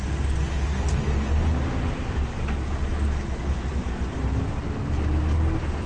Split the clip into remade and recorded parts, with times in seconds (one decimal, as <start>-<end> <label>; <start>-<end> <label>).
0.0-5.9 recorded